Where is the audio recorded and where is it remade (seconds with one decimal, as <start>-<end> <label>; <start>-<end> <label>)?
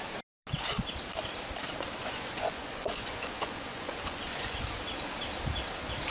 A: 0.0-2.0 recorded; 2.0-4.8 remade; 4.8-6.1 recorded